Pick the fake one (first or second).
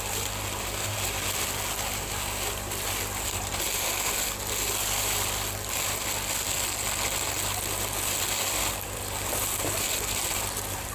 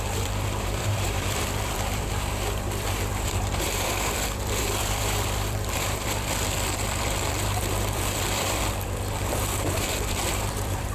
second